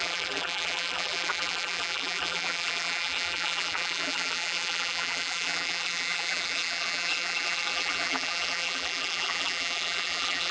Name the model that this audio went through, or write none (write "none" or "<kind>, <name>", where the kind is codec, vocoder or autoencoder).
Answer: vocoder, BigVGAN v2